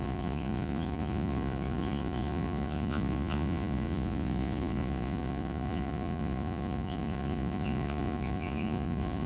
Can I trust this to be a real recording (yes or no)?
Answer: no